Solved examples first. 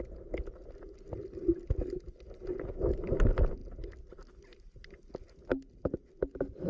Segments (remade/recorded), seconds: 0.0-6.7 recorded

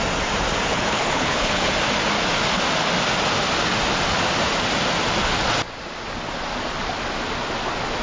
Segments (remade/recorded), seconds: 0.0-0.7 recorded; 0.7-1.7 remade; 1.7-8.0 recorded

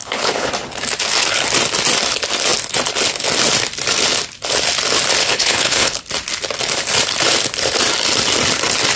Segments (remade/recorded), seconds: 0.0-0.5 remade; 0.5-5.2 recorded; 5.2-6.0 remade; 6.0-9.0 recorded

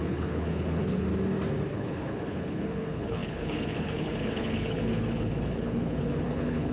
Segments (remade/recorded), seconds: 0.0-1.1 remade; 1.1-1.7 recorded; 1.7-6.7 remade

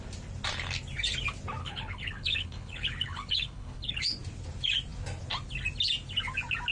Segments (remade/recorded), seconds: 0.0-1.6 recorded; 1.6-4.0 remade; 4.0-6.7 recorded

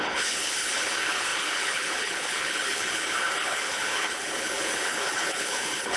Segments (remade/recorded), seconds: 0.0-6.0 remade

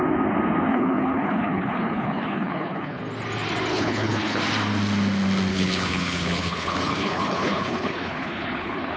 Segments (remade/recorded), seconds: 0.0-0.7 recorded; 0.7-3.0 remade; 3.0-3.7 recorded; 3.7-4.4 remade; 4.4-5.5 recorded; 5.5-9.0 remade